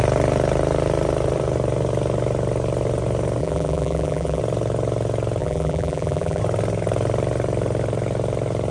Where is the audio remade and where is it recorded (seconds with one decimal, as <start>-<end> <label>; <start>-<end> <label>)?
0.0-3.4 recorded; 3.4-4.4 remade; 4.4-5.4 recorded; 5.4-6.4 remade; 6.4-8.7 recorded